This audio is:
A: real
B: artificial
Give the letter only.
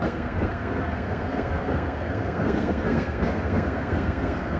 B